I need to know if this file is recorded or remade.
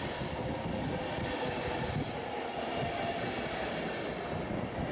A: recorded